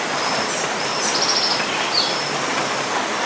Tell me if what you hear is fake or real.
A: real